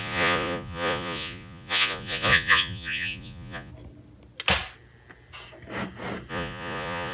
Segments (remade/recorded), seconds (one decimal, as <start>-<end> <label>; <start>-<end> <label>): 0.0-3.7 remade; 3.7-6.3 recorded; 6.3-7.1 remade